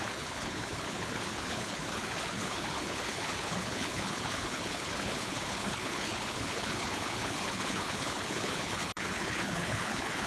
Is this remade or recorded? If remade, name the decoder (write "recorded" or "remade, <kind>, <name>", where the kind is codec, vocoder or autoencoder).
remade, codec, HILCodec